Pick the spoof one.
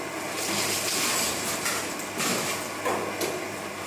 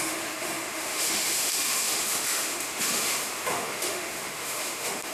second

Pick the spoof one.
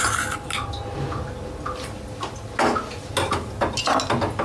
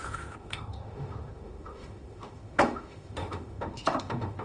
second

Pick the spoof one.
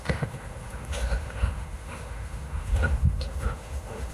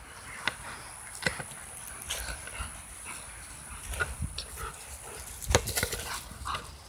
first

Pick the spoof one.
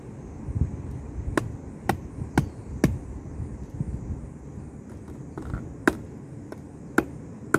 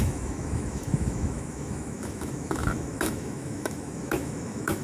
second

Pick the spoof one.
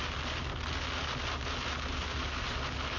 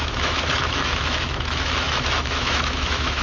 second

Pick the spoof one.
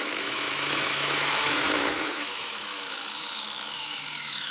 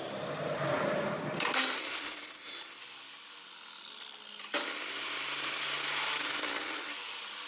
first